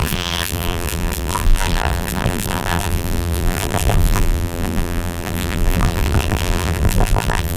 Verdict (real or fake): fake